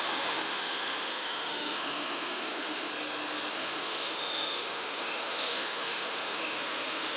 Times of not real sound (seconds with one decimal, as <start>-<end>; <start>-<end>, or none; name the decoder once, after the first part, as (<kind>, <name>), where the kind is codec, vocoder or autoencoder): 0.0-2.9 (autoencoder, DAC-VAE); 3.5-7.2